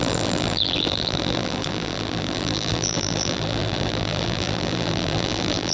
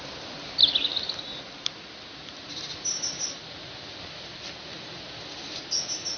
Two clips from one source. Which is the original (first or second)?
second